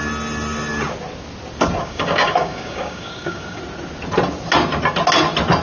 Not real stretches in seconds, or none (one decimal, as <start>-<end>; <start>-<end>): 1.8-3.6